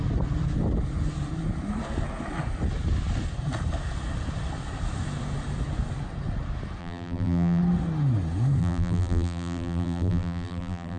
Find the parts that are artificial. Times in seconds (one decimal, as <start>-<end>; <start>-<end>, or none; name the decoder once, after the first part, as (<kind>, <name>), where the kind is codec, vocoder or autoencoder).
6.8-7.6 (vocoder, BigVGAN v2); 8.6-11.0